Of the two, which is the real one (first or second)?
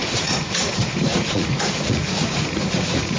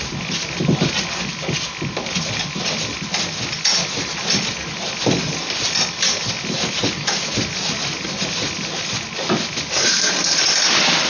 second